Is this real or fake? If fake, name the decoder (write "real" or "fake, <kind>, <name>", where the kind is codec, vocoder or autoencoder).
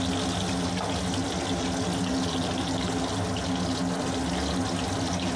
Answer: real